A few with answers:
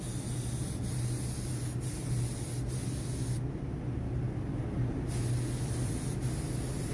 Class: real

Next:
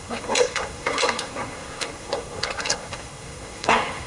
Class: fake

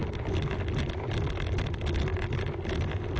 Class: real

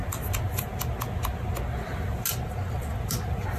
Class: real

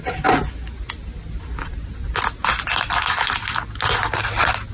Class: real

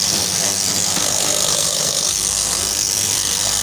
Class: fake